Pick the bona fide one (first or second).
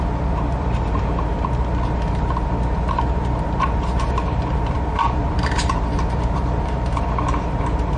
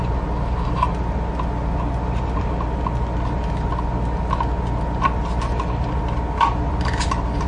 second